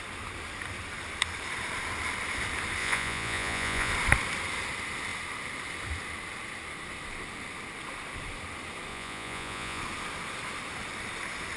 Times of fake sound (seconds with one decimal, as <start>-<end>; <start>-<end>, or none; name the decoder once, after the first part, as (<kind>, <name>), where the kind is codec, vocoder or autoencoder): 2.8-3.9 (vocoder, Vocos); 8.9-9.8